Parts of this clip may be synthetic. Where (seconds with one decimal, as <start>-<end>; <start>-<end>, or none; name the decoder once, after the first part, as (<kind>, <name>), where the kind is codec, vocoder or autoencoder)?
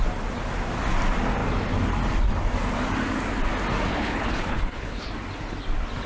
3.9-5.1 (codec, HILCodec)